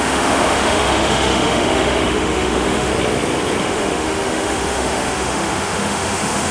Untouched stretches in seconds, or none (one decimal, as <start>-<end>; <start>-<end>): 2.9-3.6